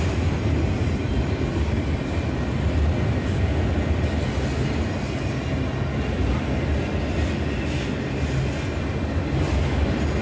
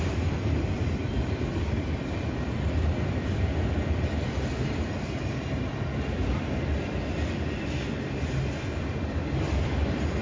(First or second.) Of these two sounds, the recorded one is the first